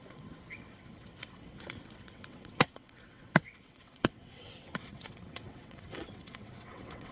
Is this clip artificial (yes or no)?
yes